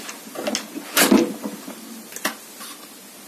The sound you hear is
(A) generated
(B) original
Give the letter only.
B